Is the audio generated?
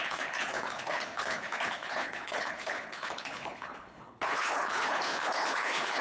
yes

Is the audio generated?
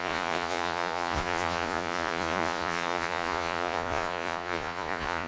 yes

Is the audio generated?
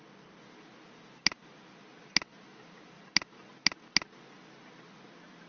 no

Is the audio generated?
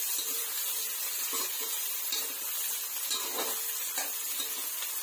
no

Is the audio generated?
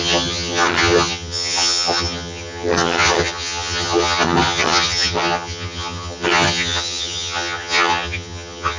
yes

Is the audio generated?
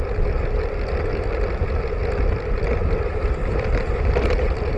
no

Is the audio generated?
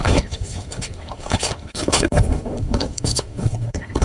yes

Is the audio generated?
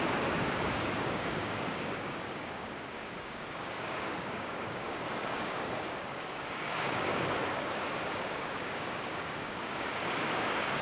yes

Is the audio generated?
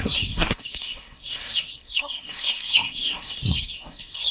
yes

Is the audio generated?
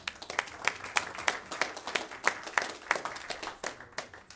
no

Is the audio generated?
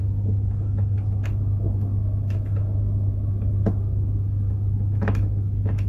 yes